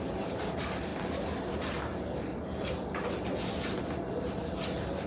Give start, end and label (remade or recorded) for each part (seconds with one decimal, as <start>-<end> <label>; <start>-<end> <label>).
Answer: 0.0-5.1 recorded